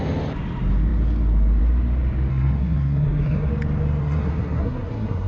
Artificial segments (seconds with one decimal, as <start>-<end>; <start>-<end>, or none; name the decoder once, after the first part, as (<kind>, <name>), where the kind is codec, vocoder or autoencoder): 2.3-3.5 (codec, SNAC); 4.0-5.3